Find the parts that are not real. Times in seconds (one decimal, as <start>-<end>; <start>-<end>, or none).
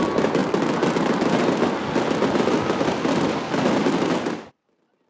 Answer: none